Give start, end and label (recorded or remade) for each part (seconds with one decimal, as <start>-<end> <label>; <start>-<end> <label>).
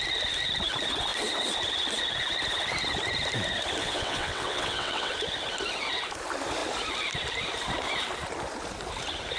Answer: 0.0-3.8 recorded; 3.8-5.1 remade; 5.1-9.4 recorded